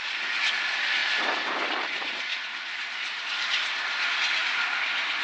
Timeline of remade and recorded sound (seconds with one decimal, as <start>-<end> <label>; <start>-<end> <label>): 0.0-1.0 recorded; 1.0-4.1 remade; 4.1-5.2 recorded